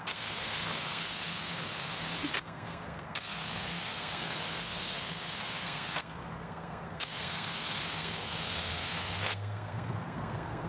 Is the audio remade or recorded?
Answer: remade